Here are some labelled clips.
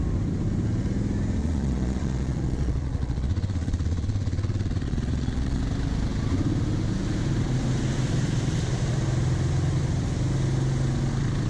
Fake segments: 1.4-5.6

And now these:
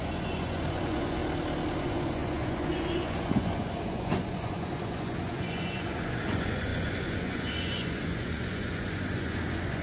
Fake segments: 0.0-1.2; 1.8-9.8